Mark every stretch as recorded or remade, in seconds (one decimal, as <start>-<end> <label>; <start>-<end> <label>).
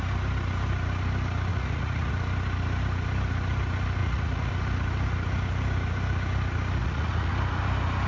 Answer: 0.0-1.5 recorded; 1.5-2.1 remade; 2.1-4.0 recorded; 4.0-4.5 remade; 4.5-6.8 recorded; 6.8-7.3 remade; 7.3-8.1 recorded